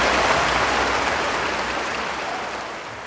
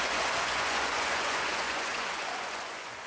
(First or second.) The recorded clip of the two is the first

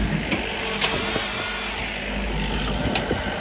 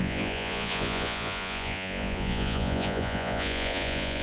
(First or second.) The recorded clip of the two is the first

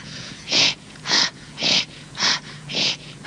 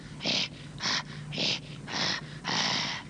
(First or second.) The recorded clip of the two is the second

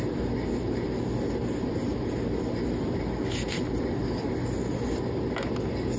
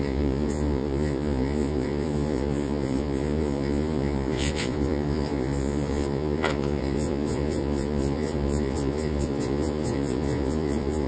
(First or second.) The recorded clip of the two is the first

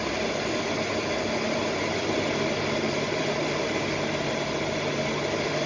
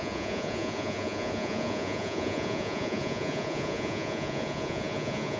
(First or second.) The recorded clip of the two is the first